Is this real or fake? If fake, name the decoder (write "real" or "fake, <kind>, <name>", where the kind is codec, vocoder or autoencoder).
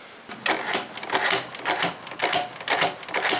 real